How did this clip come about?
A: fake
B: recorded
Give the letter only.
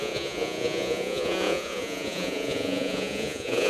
A